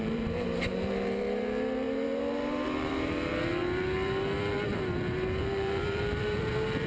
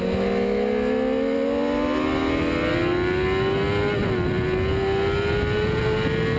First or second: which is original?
second